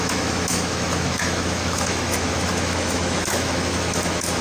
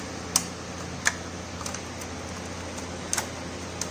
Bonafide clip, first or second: second